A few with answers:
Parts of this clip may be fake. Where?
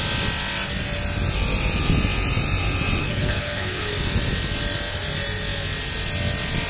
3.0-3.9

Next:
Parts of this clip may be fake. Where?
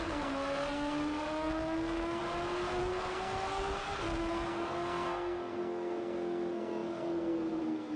0.0-2.2; 2.8-8.0